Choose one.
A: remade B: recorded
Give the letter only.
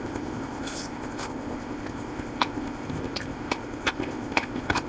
A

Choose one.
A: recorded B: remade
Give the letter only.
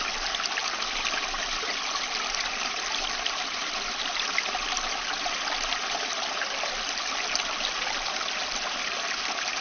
A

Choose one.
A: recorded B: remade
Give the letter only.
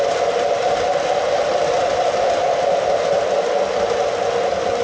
A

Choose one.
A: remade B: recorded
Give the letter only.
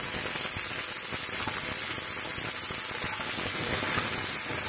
B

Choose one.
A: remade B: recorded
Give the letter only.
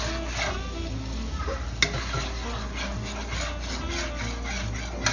B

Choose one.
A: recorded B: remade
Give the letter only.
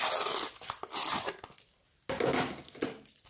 A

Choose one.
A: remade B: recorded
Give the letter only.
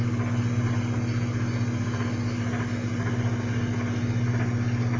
B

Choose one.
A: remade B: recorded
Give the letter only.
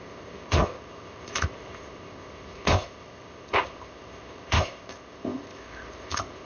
A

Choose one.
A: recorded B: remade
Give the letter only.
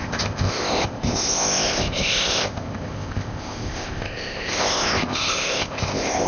B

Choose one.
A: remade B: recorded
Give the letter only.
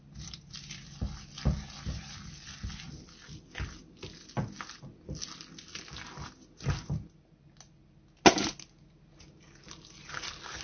B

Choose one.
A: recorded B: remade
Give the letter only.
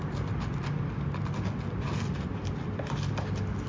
A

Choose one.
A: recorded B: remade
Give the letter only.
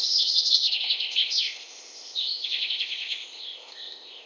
B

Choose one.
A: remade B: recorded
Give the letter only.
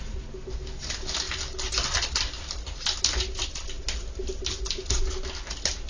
B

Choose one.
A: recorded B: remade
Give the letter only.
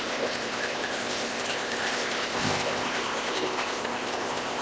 B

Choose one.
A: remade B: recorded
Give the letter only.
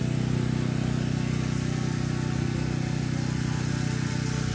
B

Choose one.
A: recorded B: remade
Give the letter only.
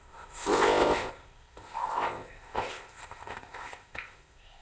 B